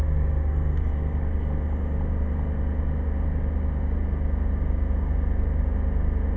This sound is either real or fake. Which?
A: real